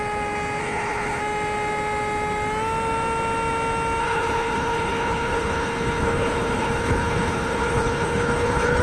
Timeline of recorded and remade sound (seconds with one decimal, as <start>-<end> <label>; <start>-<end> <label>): 0.0-0.6 recorded; 0.6-1.2 remade; 1.2-4.0 recorded; 4.0-8.8 remade